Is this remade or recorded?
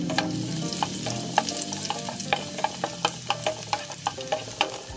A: recorded